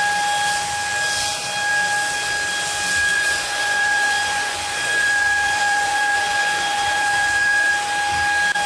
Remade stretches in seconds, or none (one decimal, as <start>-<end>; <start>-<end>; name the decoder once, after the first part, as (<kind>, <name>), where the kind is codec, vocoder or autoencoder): 3.1-7.7 (vocoder, Vocos)